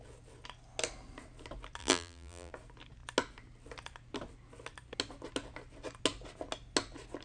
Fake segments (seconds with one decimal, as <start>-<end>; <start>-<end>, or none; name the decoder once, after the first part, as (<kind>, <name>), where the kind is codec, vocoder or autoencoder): 1.8-2.5 (vocoder, BigVGAN v2)